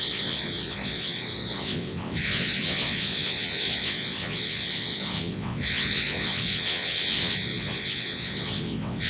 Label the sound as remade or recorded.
remade